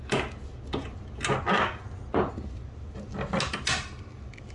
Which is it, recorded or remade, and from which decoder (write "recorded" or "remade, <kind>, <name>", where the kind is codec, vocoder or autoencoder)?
recorded